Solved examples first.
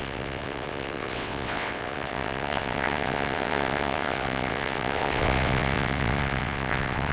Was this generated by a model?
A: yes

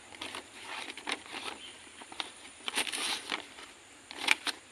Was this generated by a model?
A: yes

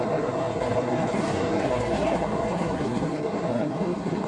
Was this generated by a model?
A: yes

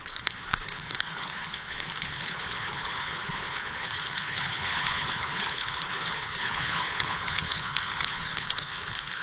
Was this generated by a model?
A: yes